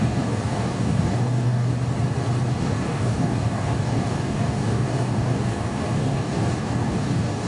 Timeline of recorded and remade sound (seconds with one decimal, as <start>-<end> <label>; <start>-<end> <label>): 0.0-1.7 remade; 1.7-2.5 recorded; 2.5-7.5 remade